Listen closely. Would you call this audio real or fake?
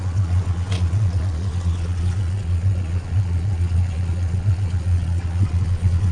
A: fake